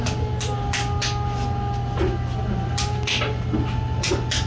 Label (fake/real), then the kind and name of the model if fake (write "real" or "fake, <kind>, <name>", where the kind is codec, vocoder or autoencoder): real